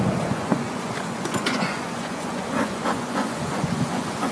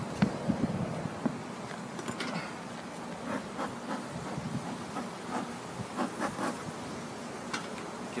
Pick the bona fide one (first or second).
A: second